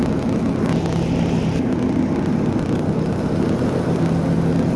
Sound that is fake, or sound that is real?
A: real